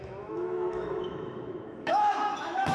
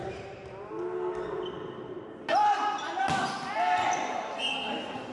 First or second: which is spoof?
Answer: first